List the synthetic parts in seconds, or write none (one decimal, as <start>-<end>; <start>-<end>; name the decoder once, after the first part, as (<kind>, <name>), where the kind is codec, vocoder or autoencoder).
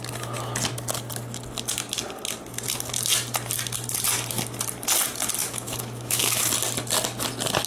5.4-6.5 (autoencoder, DAC-VAE)